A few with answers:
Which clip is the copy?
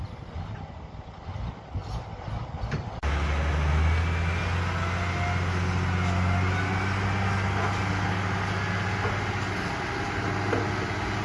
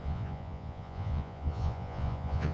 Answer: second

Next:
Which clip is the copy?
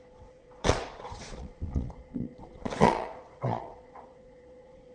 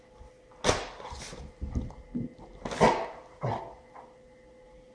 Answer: first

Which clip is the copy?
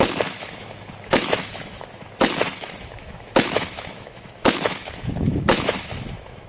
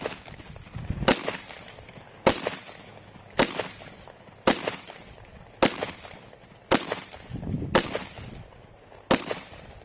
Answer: first